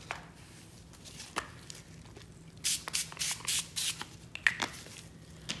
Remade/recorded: recorded